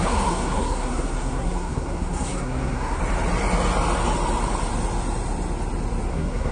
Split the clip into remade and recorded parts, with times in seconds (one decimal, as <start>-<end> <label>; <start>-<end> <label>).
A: 0.0-3.0 remade; 3.0-6.1 recorded; 6.1-6.5 remade